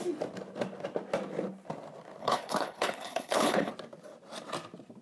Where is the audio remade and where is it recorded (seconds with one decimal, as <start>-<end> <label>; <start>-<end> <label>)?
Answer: 0.0-2.2 recorded; 2.2-3.7 remade; 3.7-5.0 recorded